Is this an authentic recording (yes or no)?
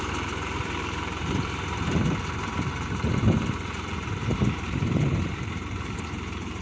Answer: no